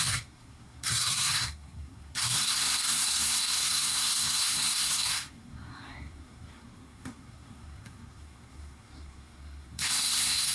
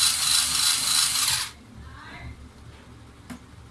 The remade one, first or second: first